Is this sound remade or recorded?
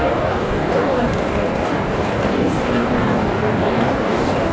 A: remade